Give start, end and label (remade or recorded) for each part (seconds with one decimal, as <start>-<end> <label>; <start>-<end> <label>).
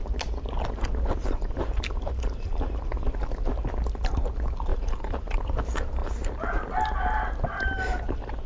0.0-1.2 recorded; 1.2-3.1 remade; 3.1-4.7 recorded; 4.7-5.4 remade; 5.4-8.5 recorded